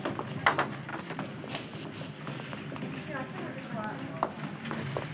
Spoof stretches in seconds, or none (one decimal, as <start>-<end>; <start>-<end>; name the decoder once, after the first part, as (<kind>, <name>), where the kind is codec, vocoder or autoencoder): none